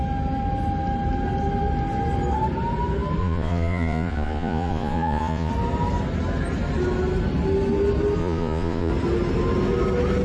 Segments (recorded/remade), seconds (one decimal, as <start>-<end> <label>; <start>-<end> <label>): 0.0-3.2 recorded; 3.2-5.5 remade; 5.5-8.2 recorded; 8.2-8.9 remade; 8.9-10.2 recorded